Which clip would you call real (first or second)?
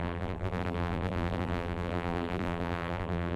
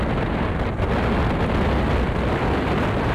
second